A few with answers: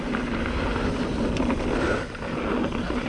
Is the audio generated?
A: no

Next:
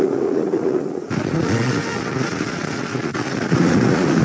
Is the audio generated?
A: yes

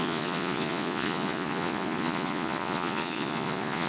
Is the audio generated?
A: yes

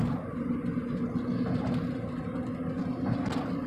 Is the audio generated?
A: no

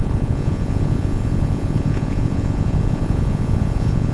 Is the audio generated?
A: yes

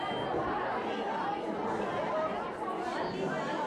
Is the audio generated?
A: no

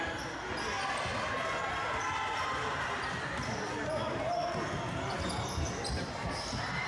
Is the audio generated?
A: no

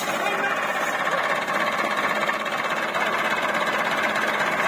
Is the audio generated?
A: no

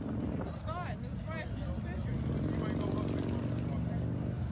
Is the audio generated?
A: no